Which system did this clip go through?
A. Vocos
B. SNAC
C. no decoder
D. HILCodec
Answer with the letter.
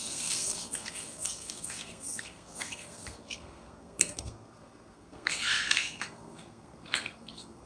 B